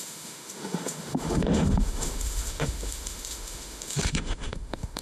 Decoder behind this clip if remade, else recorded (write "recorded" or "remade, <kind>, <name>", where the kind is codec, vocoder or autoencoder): remade, autoencoder, DAC-VAE